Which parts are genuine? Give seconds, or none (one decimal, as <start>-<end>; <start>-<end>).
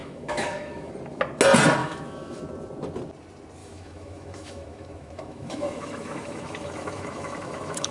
0.9-1.8; 2.4-3.6